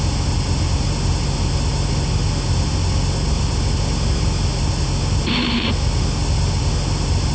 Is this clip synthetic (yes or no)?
no